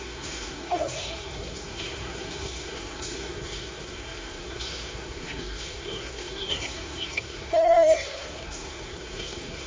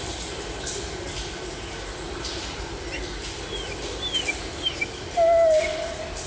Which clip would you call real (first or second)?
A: second